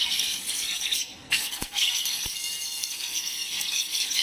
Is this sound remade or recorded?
remade